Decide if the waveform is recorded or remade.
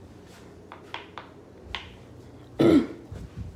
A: recorded